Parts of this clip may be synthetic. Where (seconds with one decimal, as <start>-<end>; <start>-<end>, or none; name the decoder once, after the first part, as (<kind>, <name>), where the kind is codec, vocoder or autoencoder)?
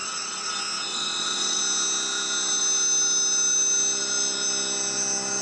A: 0.0-0.5 (vocoder, WaveNeXt); 0.9-1.6